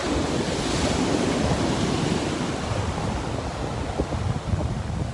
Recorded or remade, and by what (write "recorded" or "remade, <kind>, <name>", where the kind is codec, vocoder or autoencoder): recorded